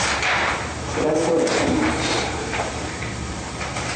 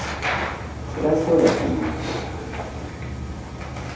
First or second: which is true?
second